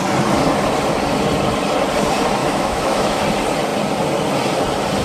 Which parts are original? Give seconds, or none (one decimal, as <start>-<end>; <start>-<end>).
0.0-2.4; 3.2-5.0